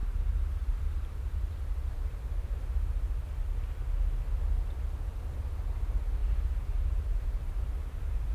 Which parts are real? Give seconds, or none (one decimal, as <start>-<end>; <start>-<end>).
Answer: 2.6-6.2; 7.6-8.3